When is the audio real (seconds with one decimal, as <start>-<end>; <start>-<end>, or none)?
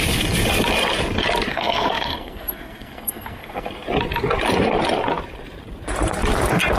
0.0-1.5; 3.7-6.8